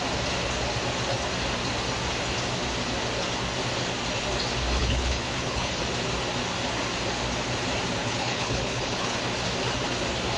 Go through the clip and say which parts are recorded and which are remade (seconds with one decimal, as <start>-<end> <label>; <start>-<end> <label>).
0.0-4.8 recorded; 4.8-5.8 remade; 5.8-8.0 recorded; 8.0-9.2 remade; 9.2-10.4 recorded